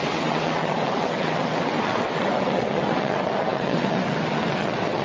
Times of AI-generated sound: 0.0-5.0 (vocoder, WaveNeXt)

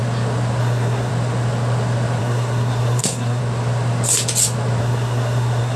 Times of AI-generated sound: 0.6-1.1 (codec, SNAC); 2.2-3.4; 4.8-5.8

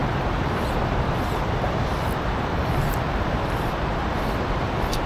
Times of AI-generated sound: none

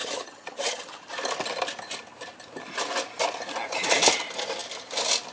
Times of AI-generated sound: 0.0-1.1 (vocoder, HiFi-GAN)